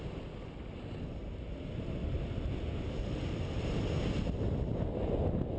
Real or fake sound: real